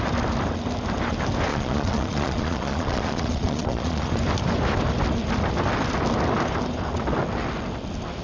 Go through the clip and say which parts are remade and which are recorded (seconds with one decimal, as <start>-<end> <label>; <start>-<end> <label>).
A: 0.0-1.5 recorded; 1.5-4.1 remade; 4.1-8.2 recorded